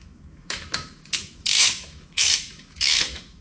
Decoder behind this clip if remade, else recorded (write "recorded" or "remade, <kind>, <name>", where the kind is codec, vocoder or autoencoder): remade, autoencoder, DAC-VAE